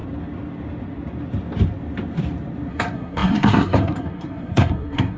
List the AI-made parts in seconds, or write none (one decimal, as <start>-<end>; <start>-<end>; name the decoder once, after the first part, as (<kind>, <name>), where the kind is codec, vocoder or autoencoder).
2.7-5.2 (codec, SNAC)